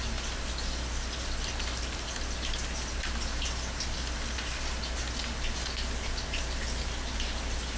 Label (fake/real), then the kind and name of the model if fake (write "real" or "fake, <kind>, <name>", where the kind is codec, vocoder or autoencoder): real